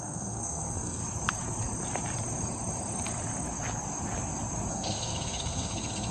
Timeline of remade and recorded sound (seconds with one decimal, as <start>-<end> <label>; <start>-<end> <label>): 0.0-1.0 remade; 1.0-4.7 recorded; 4.7-6.1 remade